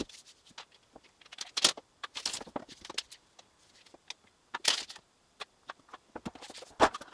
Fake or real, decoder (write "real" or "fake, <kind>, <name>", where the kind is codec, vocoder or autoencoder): real